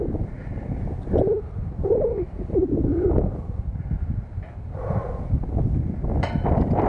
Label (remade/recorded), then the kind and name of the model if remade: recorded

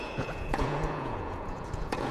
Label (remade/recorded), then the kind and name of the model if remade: remade, vocoder, Vocos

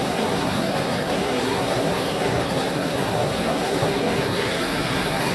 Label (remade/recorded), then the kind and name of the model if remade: remade, codec, SNAC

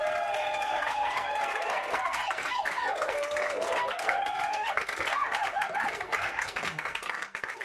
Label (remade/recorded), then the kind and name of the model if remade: remade, codec, SNAC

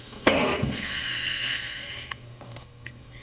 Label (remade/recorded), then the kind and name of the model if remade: remade, codec, SNAC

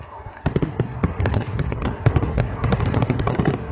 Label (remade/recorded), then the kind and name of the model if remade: remade, codec, SNAC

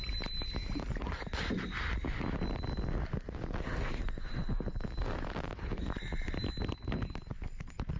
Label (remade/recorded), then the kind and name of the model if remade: recorded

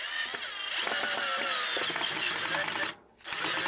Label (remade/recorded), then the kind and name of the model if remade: recorded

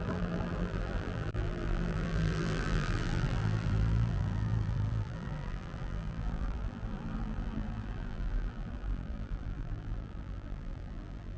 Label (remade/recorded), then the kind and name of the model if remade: remade, vocoder, BigVGAN v2